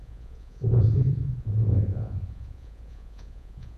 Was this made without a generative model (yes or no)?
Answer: no